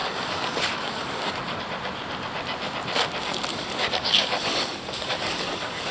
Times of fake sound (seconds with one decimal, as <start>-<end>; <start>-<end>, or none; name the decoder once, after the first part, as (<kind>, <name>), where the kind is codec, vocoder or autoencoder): 0.0-1.6 (codec, DAC); 3.5-5.9